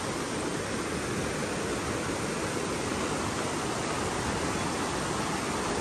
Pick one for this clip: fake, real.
real